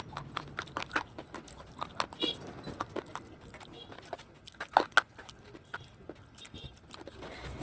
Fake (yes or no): no